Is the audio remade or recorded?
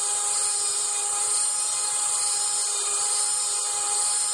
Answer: recorded